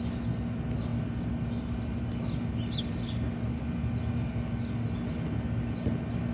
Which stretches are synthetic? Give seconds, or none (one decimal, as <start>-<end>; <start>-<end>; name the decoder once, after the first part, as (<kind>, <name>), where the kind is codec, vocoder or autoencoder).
none